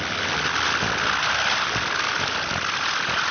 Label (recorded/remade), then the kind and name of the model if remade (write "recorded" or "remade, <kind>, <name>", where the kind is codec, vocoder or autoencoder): remade, vocoder, BigVGAN v2